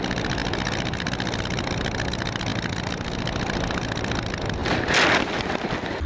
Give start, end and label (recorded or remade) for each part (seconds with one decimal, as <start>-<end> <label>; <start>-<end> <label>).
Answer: 0.0-6.1 recorded